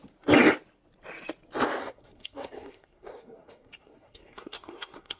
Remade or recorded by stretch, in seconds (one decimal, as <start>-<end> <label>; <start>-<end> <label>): 0.0-1.8 recorded; 1.8-5.2 remade